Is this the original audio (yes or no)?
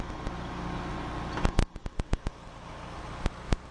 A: yes